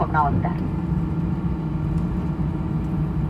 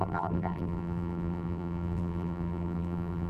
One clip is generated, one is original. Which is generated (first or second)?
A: second